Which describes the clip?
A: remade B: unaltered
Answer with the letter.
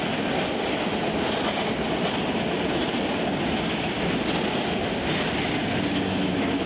B